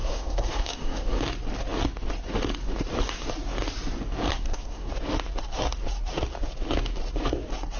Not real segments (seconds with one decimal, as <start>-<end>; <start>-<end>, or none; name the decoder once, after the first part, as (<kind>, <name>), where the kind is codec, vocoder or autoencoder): 0.0-1.2 (codec, SNAC); 4.3-4.9